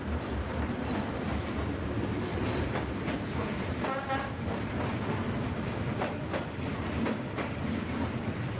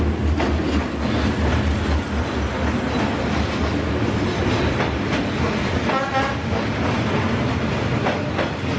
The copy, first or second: first